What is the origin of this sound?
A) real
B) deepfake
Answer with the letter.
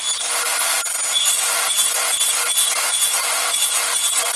A